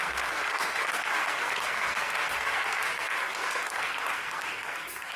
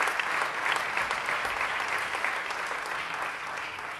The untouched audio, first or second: second